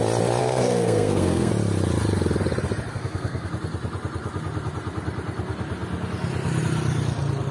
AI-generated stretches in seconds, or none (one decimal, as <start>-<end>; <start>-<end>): 0.4-1.5; 2.9-3.5